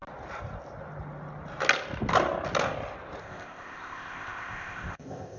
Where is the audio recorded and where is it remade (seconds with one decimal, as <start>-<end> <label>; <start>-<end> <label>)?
0.0-3.2 recorded; 3.2-5.4 remade